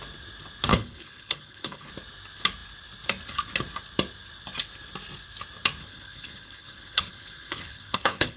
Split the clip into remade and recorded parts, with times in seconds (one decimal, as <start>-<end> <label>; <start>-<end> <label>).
0.0-0.7 recorded; 0.7-1.9 remade; 1.9-5.8 recorded; 5.8-8.4 remade